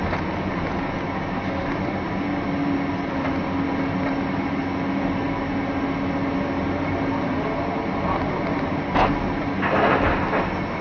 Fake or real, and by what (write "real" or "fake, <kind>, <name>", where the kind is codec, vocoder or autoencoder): real